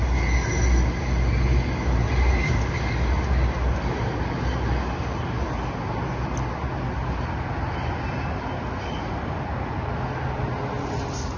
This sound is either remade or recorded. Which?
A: recorded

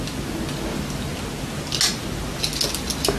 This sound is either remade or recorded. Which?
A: recorded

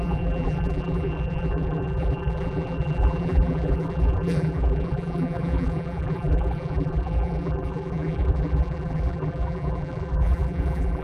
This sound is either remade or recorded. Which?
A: remade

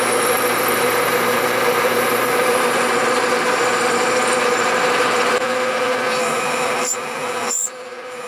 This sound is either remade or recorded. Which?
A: remade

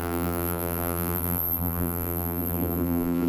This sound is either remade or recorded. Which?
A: remade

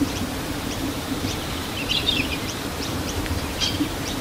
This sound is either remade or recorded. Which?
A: remade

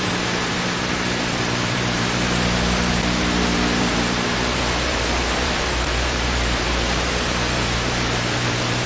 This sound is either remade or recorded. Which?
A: remade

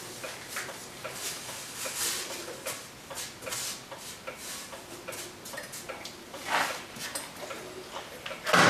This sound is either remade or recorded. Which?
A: recorded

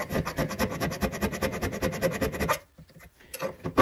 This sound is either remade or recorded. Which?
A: remade